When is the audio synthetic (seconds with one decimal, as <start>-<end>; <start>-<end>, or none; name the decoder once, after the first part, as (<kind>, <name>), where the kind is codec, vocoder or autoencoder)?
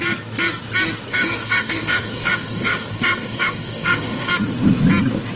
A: 1.1-4.3 (codec, DAC)